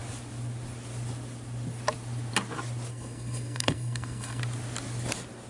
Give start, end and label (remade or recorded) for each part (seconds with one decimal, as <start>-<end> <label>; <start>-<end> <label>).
0.0-2.9 recorded; 2.9-4.4 remade; 4.4-5.5 recorded